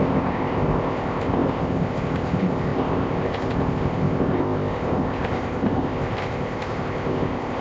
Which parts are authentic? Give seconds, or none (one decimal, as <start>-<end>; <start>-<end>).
none